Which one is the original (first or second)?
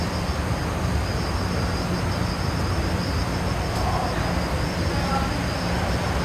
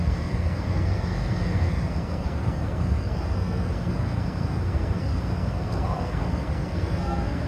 first